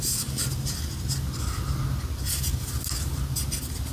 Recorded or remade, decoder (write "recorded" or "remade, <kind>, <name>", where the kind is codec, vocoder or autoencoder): recorded